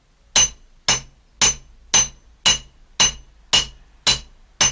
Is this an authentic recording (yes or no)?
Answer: yes